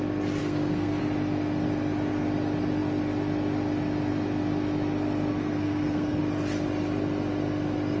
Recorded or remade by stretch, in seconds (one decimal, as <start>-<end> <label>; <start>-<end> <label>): 0.0-0.4 recorded; 0.4-1.0 remade; 1.0-5.3 recorded; 5.3-6.2 remade; 6.2-8.0 recorded